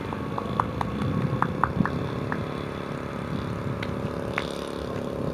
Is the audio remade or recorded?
recorded